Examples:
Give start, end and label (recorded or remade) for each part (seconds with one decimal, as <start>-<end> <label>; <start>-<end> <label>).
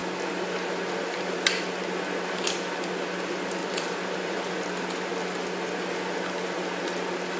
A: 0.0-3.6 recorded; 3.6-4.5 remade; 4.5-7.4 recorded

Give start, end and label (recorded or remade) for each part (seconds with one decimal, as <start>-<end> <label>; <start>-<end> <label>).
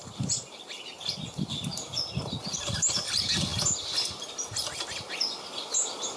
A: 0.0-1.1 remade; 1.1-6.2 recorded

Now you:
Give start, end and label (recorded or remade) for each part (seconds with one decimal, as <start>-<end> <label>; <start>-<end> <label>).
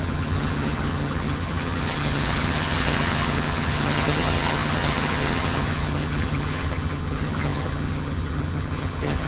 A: 0.0-9.3 remade